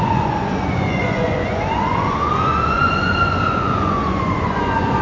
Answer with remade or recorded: remade